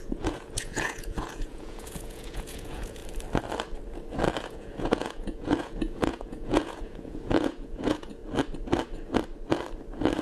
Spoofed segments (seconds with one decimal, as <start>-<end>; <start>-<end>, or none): 0.0-3.0; 4.4-8.2